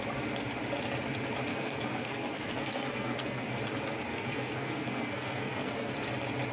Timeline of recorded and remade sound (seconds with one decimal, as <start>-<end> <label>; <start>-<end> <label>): 0.0-1.5 recorded; 1.5-3.6 remade; 3.6-4.1 recorded; 4.1-5.9 remade; 5.9-6.5 recorded